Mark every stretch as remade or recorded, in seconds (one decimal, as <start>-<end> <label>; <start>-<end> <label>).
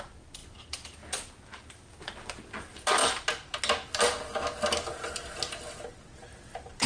0.0-0.4 recorded; 0.4-1.8 remade; 1.8-6.3 recorded; 6.3-6.9 remade